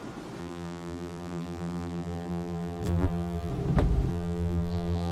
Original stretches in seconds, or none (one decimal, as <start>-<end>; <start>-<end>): 0.0-0.4; 3.5-4.1